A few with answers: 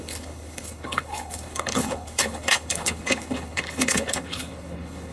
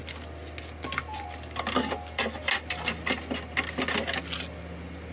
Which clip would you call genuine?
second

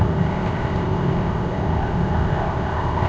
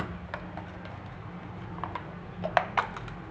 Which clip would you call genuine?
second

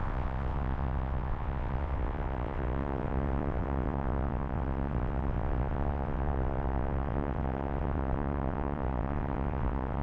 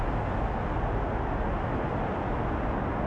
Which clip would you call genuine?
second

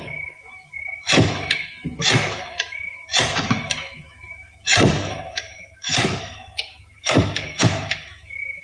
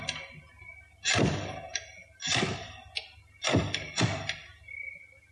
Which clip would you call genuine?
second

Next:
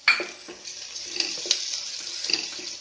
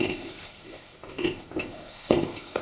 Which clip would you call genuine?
first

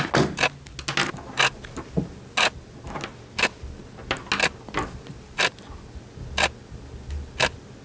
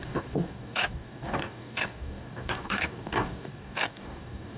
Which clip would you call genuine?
first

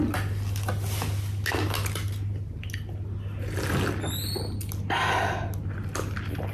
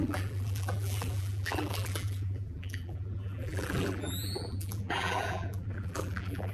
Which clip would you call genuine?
first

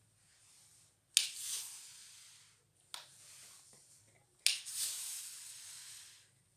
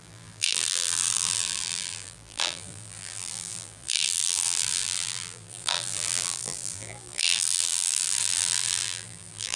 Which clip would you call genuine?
first